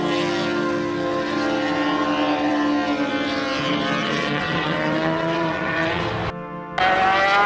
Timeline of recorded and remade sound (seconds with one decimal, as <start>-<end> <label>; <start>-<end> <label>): 0.0-4.0 recorded; 4.0-6.0 remade; 6.0-7.5 recorded